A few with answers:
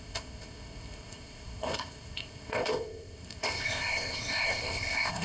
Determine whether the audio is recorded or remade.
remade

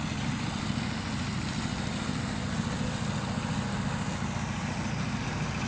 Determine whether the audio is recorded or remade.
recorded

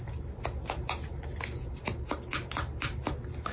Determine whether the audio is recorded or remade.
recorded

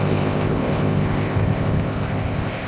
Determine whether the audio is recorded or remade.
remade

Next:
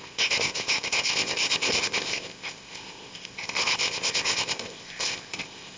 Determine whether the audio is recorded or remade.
remade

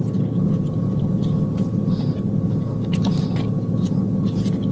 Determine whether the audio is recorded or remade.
recorded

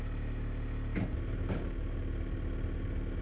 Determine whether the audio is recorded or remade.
recorded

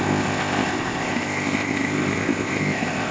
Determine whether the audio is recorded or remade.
remade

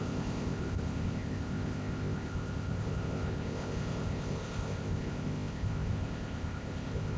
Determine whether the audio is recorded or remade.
remade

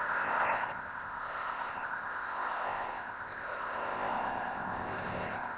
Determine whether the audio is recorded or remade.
remade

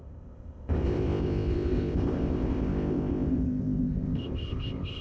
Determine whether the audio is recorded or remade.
remade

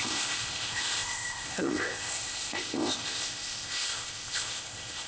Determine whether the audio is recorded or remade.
remade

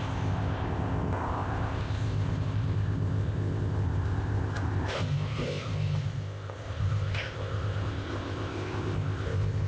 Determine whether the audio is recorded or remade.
remade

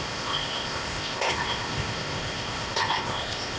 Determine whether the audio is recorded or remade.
remade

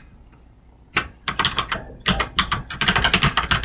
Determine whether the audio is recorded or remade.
recorded